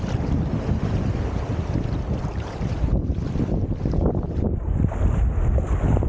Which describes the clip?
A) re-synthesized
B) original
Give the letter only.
B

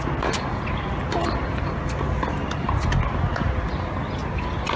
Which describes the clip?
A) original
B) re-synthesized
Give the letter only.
A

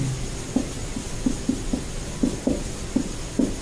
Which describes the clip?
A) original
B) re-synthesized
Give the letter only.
A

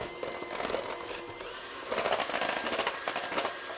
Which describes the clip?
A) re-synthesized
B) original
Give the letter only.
B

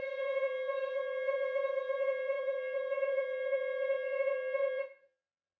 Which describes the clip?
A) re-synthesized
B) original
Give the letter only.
A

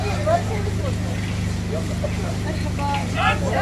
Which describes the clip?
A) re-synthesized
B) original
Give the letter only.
B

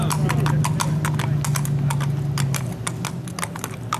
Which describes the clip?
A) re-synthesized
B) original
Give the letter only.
B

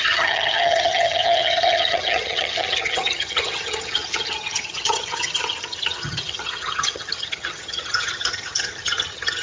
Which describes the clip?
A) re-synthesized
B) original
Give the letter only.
A